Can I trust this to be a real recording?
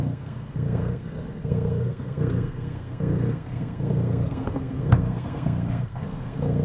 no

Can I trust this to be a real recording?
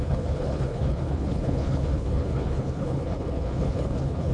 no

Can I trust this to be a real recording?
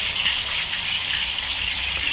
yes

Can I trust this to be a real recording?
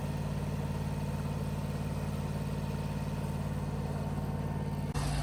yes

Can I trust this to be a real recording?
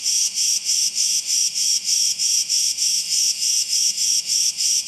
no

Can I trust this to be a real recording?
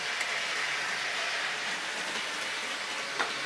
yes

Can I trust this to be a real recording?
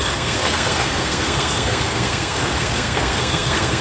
no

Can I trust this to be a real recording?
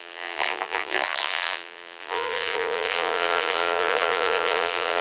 no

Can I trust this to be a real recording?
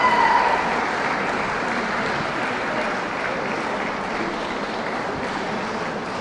no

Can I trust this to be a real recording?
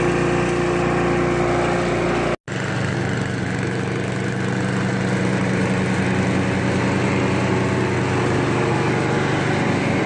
yes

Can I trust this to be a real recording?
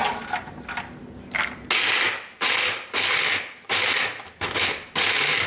yes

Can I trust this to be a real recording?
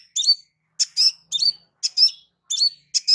yes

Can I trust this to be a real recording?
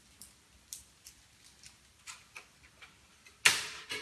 yes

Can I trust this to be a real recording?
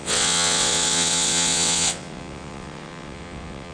no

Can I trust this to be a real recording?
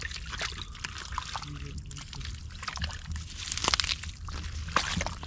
yes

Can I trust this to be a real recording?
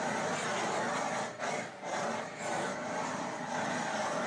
yes